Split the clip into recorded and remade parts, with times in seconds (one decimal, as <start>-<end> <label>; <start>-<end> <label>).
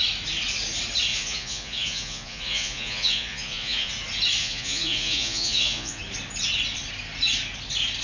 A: 0.0-1.1 recorded; 1.1-3.9 remade; 3.9-4.4 recorded; 4.4-6.0 remade; 6.0-8.0 recorded